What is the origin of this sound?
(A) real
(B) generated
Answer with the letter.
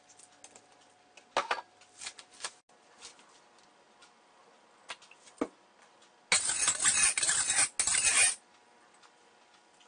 A